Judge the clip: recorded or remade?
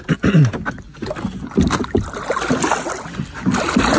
recorded